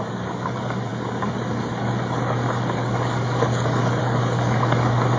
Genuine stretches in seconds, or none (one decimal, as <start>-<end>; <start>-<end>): none